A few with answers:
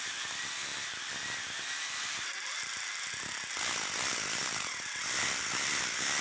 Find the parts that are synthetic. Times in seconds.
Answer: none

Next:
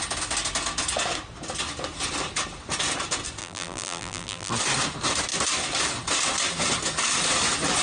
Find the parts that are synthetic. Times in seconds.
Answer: 3.4-4.5 (vocoder, BigVGAN v2)

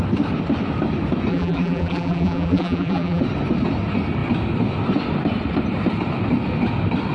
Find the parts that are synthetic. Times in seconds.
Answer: 1.3-3.2 (vocoder, BigVGAN v2)

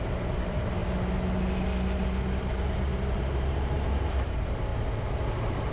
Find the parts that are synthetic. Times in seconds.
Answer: 0.0-0.8 (vocoder, BigVGAN v2); 2.5-4.7

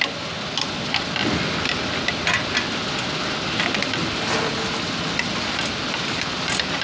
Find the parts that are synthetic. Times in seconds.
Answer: none

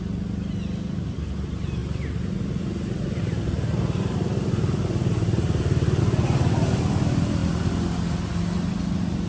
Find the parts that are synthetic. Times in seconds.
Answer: 1.8-6.0 (vocoder, BigVGAN v2); 7.4-9.3

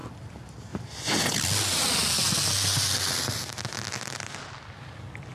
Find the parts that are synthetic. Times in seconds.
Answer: none